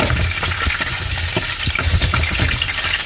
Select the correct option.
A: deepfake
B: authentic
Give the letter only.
B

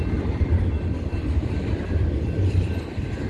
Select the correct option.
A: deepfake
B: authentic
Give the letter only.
A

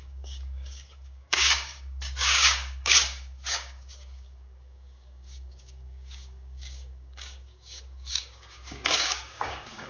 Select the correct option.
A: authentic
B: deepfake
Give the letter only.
B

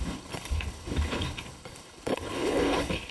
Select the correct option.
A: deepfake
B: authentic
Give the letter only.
A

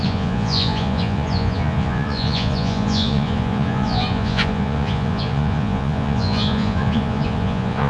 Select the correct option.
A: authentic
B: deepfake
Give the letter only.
B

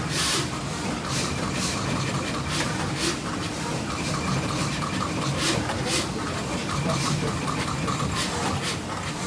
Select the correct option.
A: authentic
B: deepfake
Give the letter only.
B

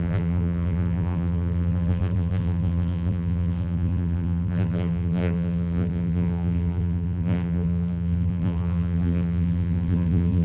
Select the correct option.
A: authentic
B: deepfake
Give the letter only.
B